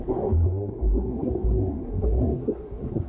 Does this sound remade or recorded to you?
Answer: remade